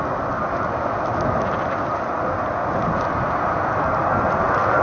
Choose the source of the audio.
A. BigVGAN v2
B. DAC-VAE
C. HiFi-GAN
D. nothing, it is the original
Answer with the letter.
D